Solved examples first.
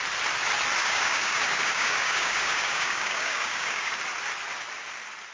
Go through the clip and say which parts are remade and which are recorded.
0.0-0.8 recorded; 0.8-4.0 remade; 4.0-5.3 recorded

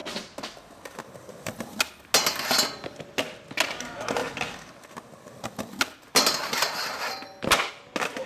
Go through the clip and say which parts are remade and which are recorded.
0.0-8.3 recorded

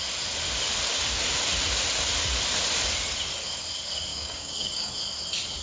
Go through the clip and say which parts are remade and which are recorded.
0.0-4.1 recorded; 4.1-4.9 remade; 4.9-5.6 recorded